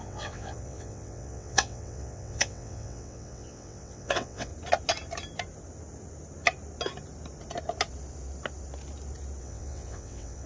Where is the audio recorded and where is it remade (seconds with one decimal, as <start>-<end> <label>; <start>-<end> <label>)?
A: 0.0-4.5 remade; 4.5-9.4 recorded; 9.4-10.5 remade

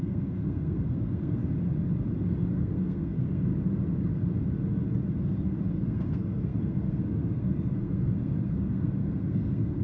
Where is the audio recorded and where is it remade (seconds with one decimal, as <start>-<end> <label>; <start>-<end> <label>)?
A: 0.0-1.4 remade; 1.4-2.6 recorded; 2.6-3.5 remade; 3.5-5.7 recorded; 5.7-9.8 remade

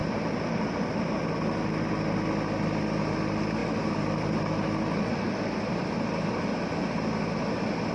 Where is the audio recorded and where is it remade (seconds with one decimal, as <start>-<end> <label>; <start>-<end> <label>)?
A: 0.0-3.6 recorded; 3.6-6.3 remade; 6.3-7.9 recorded

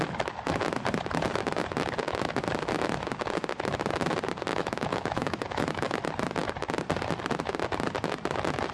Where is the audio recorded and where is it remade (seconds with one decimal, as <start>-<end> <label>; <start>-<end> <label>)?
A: 0.0-4.5 recorded; 4.5-6.0 remade; 6.0-8.7 recorded

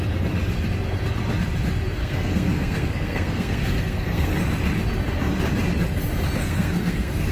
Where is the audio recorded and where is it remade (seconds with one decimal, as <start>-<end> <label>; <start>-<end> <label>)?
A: 0.0-2.0 recorded; 2.0-4.4 remade; 4.4-6.4 recorded; 6.4-7.3 remade

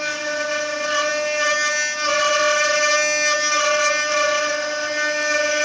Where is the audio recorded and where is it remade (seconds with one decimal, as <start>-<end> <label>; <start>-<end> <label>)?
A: 0.0-5.6 recorded